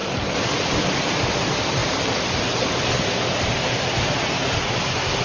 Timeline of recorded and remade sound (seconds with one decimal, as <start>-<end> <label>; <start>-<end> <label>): 0.0-5.2 recorded